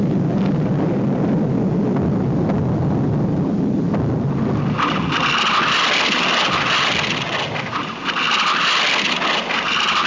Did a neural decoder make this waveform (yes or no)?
no